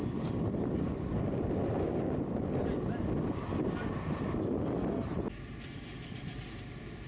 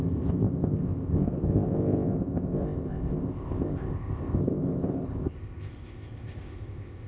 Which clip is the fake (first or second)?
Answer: second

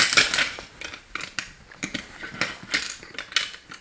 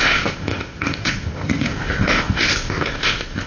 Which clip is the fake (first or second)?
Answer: second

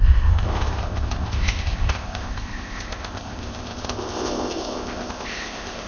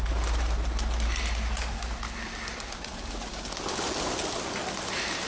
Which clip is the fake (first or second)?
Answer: first